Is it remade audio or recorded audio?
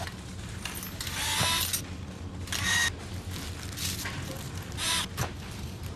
recorded